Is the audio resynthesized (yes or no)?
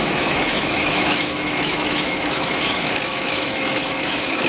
yes